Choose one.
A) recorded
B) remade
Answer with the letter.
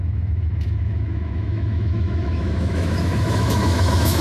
B